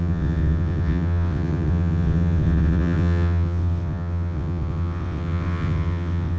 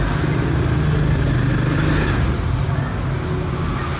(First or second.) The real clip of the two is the second